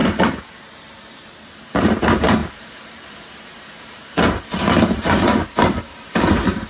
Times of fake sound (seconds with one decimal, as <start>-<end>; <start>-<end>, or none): 0.6-6.7